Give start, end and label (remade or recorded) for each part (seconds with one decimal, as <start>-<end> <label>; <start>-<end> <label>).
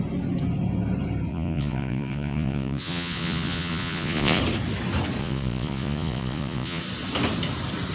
0.0-1.3 recorded; 1.3-4.4 remade; 4.4-5.2 recorded; 5.2-6.8 remade; 6.8-7.9 recorded